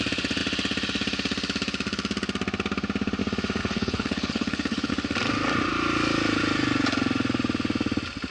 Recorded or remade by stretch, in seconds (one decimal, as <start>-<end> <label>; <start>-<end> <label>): 0.0-3.6 recorded; 3.6-4.9 remade; 4.9-8.3 recorded